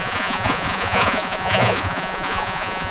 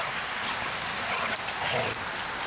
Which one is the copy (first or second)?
first